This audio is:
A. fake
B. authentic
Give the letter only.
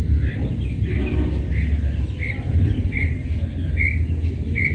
B